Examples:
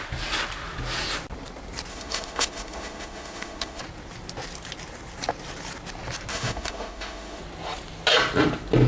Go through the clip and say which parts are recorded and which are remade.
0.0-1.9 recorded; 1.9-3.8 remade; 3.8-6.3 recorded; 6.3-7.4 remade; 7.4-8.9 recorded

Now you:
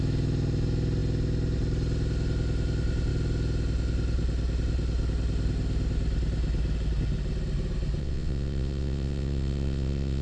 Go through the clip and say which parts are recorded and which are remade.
0.0-8.0 recorded; 8.0-10.2 remade

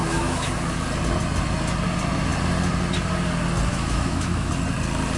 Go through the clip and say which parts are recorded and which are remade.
0.0-0.5 remade; 0.5-3.7 recorded; 3.7-4.5 remade; 4.5-5.2 recorded

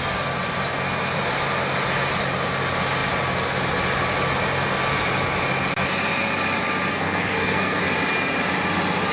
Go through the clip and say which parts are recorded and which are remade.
0.0-6.9 recorded; 6.9-7.8 remade; 7.8-9.1 recorded

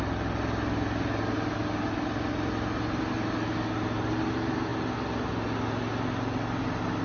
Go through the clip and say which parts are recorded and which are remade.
0.0-7.0 recorded